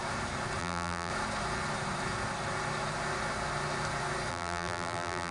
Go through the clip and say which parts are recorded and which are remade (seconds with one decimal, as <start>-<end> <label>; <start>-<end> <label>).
0.0-0.6 recorded; 0.6-1.1 remade; 1.1-4.3 recorded; 4.3-5.3 remade